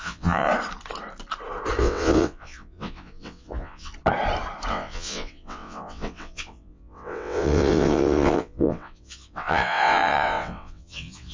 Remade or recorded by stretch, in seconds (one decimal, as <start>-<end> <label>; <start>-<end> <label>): 0.0-0.5 remade; 0.5-1.8 recorded; 1.8-3.9 remade; 3.9-4.7 recorded; 4.7-11.3 remade